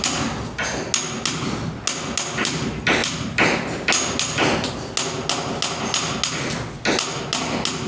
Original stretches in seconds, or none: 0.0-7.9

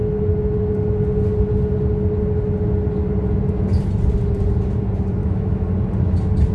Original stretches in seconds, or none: 0.0-5.2; 5.7-6.5